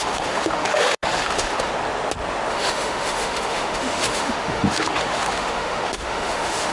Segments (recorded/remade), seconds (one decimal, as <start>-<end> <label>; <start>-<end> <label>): 0.0-1.7 remade; 1.7-2.5 recorded; 2.5-6.7 remade